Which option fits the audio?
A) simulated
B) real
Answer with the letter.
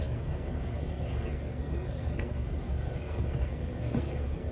A